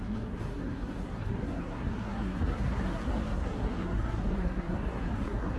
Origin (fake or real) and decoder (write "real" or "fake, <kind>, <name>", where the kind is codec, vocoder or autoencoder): fake, codec, SNAC